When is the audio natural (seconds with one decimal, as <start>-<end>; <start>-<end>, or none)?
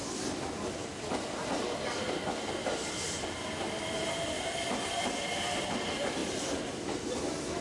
0.0-7.6